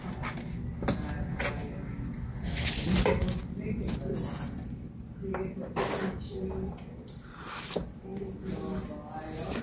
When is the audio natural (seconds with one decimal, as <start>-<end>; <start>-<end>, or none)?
0.0-9.6